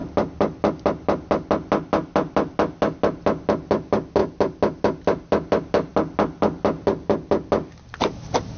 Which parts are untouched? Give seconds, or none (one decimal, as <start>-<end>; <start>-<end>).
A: 0.0-8.6